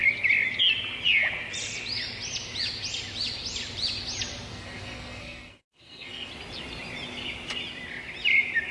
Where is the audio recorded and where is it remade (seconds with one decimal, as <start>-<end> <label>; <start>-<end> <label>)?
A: 0.0-4.5 recorded; 4.5-6.3 remade; 6.3-8.7 recorded